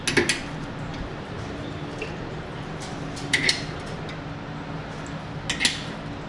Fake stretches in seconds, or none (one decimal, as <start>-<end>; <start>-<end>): 0.9-4.0